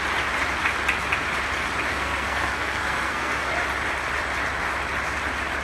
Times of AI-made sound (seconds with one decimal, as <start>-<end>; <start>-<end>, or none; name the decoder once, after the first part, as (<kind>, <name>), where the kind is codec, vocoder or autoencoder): 1.9-3.5 (codec, SNAC)